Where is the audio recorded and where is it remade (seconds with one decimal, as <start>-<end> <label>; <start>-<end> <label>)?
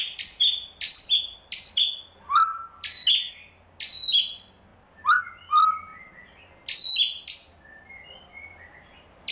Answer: 0.0-9.3 recorded